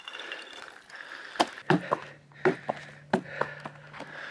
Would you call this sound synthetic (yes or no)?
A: no